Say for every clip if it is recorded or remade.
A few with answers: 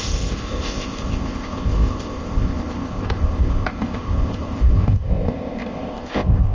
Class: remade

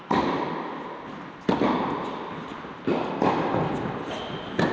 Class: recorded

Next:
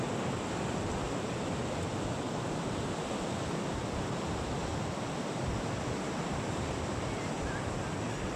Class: recorded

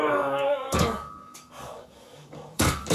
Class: remade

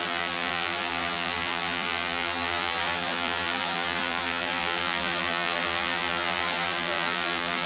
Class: remade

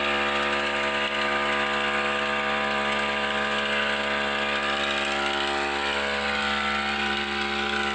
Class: recorded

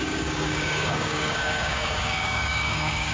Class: remade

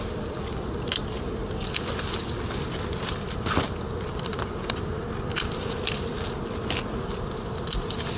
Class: recorded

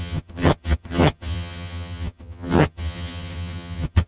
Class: remade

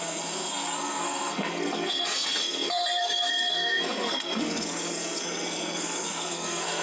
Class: remade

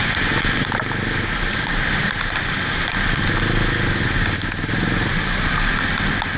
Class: recorded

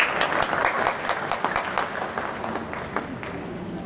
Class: recorded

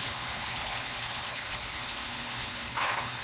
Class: remade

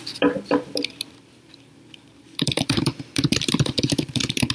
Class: remade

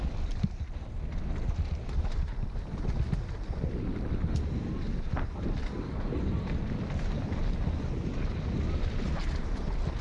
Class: recorded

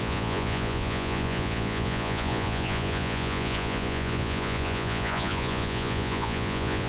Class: remade